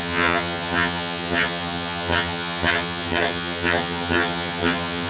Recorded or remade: remade